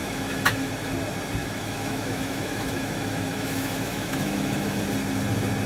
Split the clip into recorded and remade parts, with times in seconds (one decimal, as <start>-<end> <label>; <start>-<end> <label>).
0.0-0.7 remade; 0.7-1.4 recorded; 1.4-4.8 remade; 4.8-5.7 recorded